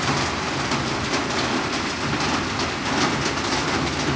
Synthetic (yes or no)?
no